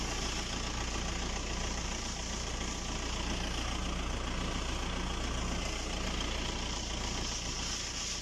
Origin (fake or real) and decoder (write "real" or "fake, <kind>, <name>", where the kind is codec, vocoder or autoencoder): real